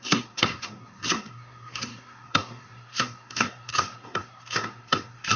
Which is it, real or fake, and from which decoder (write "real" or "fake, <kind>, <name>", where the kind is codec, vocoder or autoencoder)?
fake, codec, SNAC